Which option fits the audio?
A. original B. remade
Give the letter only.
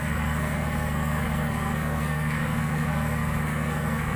B